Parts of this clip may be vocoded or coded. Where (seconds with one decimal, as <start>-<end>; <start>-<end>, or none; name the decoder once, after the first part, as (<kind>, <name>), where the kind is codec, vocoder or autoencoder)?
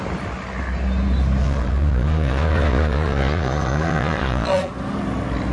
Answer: 1.4-4.7 (vocoder, Vocos)